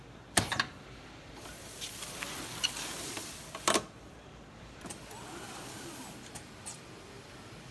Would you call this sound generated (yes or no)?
yes